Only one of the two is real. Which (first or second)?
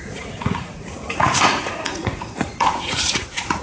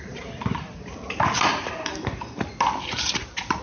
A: second